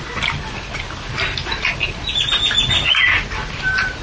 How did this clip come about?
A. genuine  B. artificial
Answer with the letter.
A